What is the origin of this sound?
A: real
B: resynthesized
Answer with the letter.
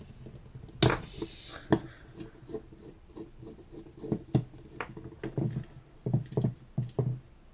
A